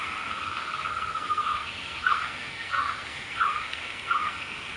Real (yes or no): no